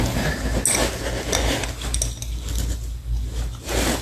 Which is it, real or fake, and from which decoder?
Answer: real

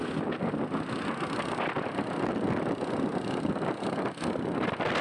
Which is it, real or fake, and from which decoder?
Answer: real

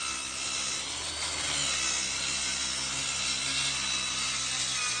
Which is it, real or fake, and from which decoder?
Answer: real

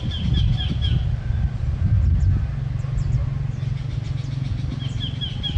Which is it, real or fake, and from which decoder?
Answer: real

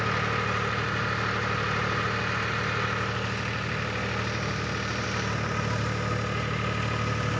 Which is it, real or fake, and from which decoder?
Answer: real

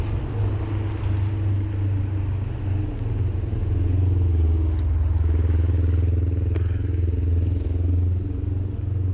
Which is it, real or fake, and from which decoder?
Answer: real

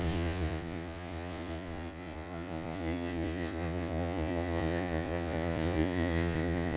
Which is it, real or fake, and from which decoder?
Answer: fake, vocoder, Vocos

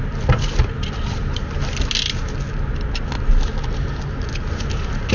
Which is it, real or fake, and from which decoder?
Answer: real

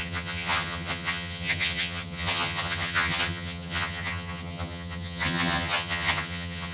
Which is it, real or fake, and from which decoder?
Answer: fake, vocoder, HiFi-GAN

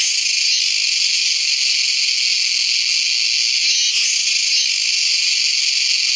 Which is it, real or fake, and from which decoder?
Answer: real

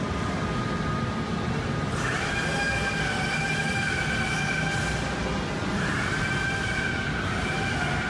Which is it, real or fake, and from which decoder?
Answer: real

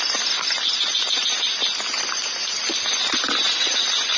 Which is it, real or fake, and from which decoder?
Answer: real